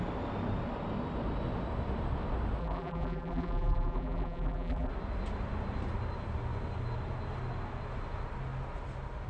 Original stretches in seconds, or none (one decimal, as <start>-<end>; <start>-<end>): 0.0-2.6; 4.9-9.3